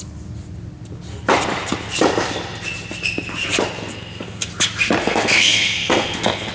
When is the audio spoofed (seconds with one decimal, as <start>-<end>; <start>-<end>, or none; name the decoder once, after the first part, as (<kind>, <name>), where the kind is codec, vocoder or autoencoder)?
3.9-4.5 (codec, SNAC); 5.0-6.5